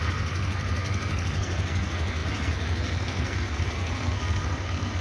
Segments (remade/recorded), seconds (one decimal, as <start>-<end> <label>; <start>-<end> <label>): 0.0-5.0 remade